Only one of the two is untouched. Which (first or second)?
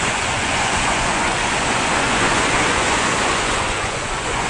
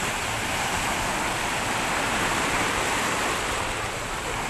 second